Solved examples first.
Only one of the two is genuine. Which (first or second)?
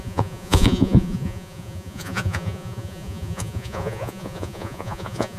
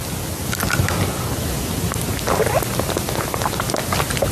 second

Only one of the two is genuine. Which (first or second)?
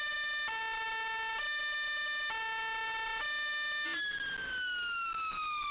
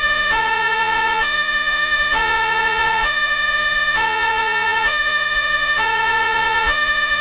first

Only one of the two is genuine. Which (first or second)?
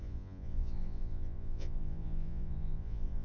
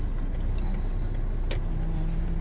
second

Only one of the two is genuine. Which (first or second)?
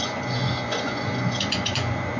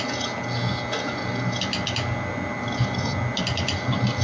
second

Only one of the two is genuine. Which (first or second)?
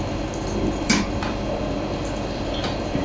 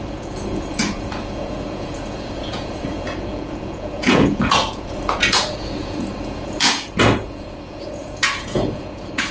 first